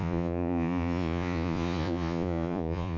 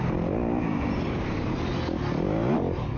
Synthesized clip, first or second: first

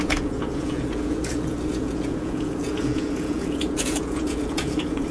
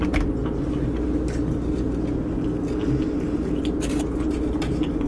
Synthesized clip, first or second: first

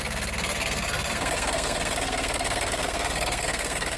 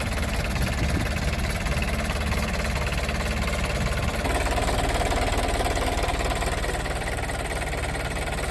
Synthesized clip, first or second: first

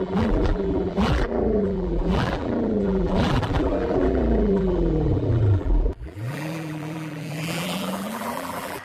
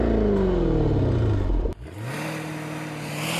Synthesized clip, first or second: first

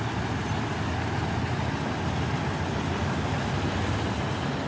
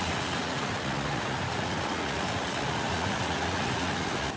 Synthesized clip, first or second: second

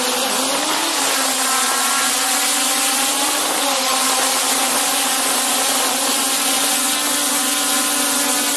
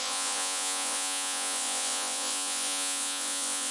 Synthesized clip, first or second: second